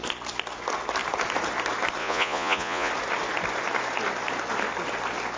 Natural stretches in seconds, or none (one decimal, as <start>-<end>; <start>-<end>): 0.0-2.0; 2.9-5.4